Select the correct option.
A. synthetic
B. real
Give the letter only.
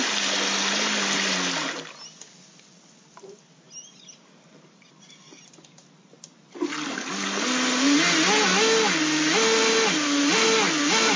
B